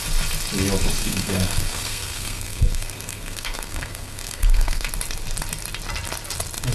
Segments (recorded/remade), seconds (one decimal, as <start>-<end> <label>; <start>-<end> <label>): 0.0-1.0 recorded; 1.0-4.9 remade; 4.9-6.7 recorded